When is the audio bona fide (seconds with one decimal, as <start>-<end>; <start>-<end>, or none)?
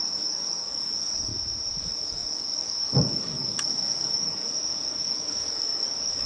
1.3-1.8